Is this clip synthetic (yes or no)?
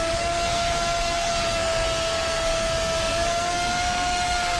yes